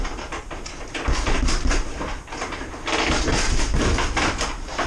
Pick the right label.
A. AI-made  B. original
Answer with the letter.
B